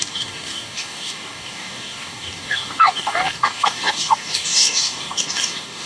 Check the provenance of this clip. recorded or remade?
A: remade